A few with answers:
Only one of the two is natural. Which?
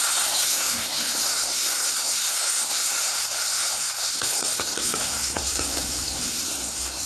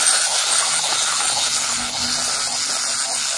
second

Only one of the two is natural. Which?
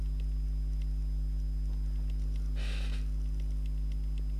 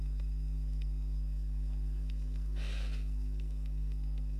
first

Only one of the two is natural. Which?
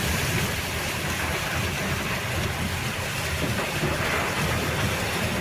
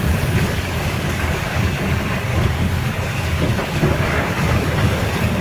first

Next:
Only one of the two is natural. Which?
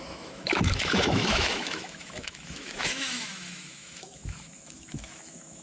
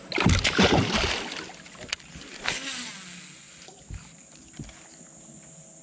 second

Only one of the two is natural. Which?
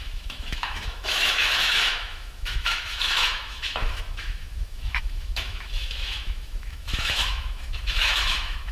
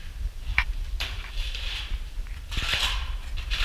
second